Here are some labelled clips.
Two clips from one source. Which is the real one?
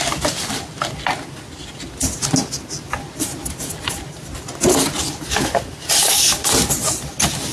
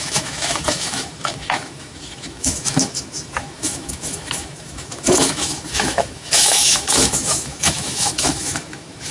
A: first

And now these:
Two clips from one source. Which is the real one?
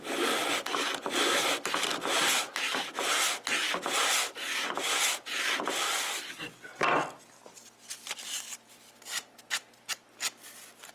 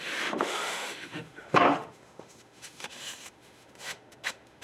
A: first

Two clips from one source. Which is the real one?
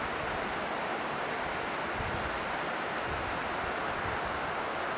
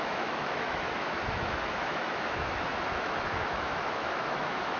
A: first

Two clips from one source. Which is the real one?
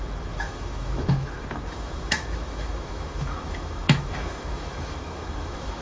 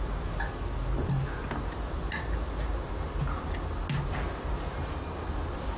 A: second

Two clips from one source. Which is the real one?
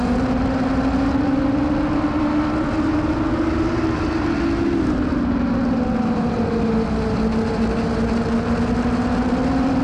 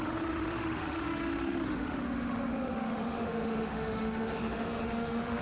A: first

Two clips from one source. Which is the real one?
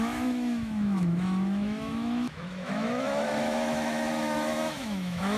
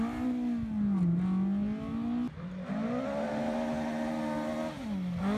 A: second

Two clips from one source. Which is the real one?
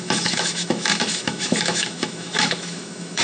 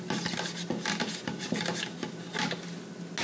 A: second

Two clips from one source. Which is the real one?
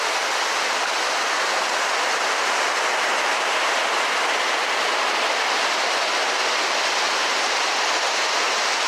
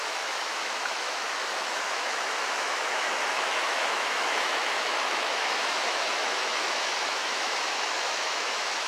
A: first